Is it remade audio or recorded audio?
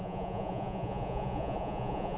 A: remade